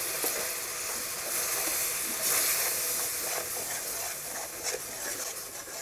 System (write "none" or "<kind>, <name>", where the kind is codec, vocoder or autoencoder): none